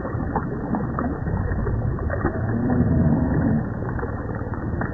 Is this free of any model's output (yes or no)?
no